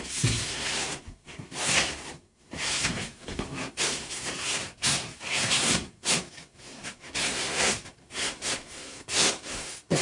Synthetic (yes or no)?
yes